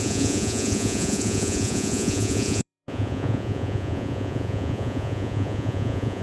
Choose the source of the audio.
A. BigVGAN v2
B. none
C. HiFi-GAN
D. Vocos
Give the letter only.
D